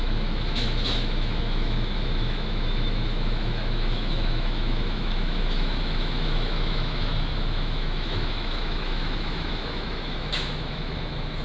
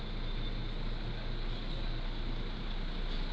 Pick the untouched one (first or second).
second